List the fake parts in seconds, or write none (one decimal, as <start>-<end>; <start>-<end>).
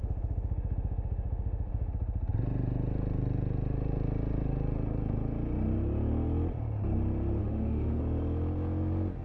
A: 0.0-1.9; 7.4-8.0